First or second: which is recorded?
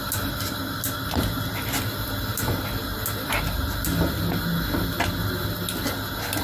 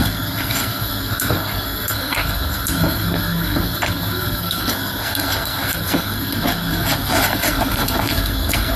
first